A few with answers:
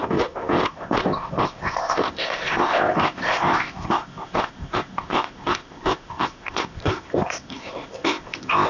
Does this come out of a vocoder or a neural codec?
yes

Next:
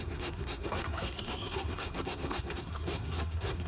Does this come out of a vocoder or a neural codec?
yes